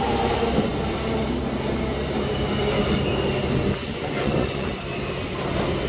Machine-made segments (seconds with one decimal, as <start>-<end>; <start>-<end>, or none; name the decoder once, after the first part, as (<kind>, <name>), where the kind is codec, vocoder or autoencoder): 3.8-4.7 (vocoder, Vocos)